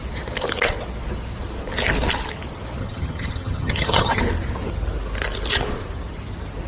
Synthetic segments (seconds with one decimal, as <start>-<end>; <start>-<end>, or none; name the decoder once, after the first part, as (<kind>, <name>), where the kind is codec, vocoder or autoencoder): 2.8-4.2 (vocoder, HiFi-GAN)